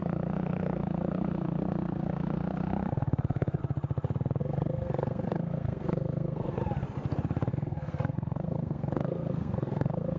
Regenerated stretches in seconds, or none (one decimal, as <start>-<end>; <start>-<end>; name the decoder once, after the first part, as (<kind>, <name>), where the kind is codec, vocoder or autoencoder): 0.0-3.6 (codec, SNAC); 4.4-6.6; 7.5-10.2